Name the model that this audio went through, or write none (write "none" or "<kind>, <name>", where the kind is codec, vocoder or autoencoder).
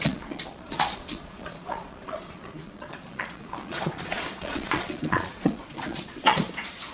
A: vocoder, Vocos